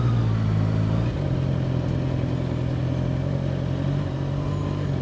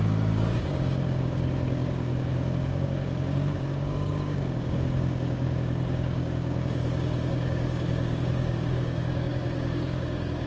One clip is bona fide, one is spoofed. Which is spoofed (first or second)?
second